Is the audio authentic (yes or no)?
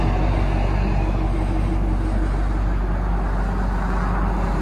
yes